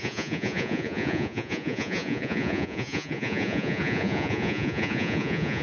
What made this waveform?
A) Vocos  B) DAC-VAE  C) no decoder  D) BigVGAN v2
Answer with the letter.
A